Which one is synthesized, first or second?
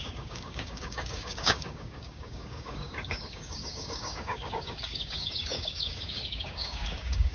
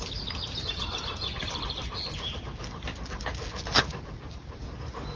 first